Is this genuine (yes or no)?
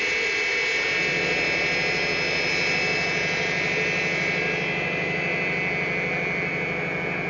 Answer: yes